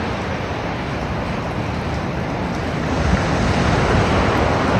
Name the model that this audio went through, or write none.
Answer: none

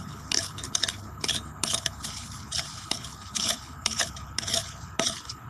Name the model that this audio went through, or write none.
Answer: codec, HILCodec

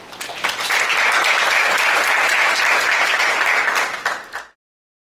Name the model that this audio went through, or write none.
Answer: none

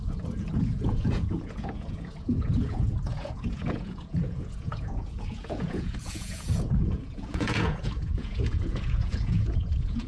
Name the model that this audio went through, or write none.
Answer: vocoder, Vocos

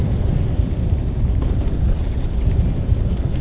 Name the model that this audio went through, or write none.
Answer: none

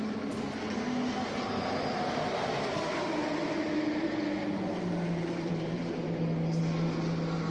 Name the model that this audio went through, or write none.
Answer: none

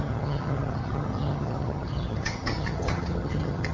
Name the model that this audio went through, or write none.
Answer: vocoder, HiFi-GAN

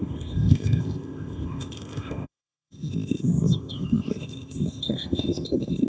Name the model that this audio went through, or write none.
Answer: codec, ZipCodec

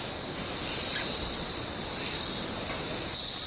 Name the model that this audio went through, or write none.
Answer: none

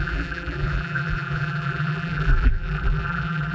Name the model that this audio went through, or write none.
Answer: vocoder, BigVGAN v2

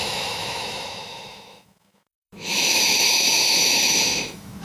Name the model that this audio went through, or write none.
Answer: autoencoder, DAC-VAE